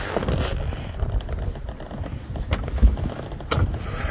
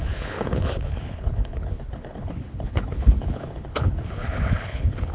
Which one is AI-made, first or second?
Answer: second